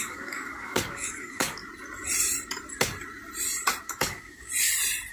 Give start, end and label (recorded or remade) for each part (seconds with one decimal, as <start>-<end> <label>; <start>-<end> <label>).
0.0-1.6 remade; 1.6-3.8 recorded; 3.8-4.5 remade; 4.5-5.1 recorded